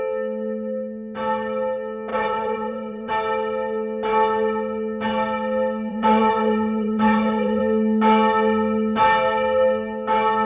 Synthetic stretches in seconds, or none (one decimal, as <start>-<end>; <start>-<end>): 2.1-3.1; 5.9-7.6